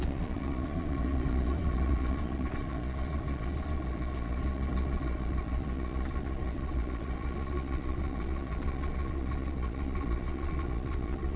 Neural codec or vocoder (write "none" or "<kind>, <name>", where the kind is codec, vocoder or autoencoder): vocoder, Vocos